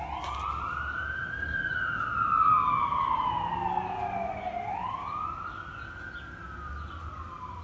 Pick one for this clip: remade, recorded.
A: recorded